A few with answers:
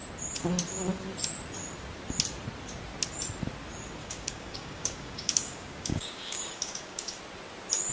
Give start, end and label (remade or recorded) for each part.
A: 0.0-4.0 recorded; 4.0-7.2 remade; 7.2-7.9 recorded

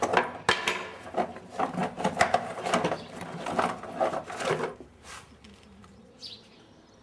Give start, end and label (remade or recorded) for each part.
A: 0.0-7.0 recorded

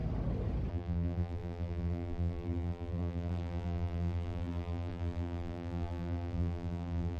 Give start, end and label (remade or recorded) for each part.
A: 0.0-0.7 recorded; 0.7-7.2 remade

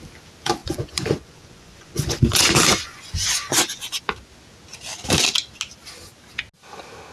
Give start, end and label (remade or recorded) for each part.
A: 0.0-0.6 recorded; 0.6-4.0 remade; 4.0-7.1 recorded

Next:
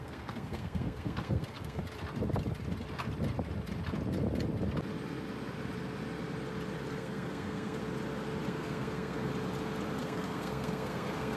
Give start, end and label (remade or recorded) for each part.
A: 0.0-1.8 remade; 1.8-6.9 recorded; 6.9-7.8 remade; 7.8-8.5 recorded; 8.5-9.3 remade; 9.3-10.0 recorded; 10.0-11.4 remade

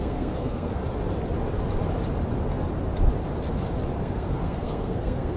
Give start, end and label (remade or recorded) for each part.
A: 0.0-0.8 remade; 0.8-4.0 recorded; 4.0-5.4 remade

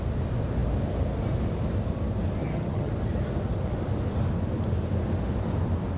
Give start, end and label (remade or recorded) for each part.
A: 0.0-2.4 recorded; 2.4-2.9 remade; 2.9-6.0 recorded

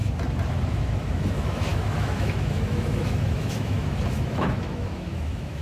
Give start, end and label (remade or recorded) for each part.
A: 0.0-0.5 recorded; 0.5-5.6 remade